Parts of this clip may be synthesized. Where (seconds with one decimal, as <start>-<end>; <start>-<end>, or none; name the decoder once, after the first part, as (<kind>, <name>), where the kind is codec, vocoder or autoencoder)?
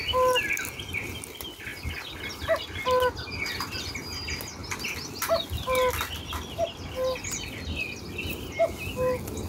none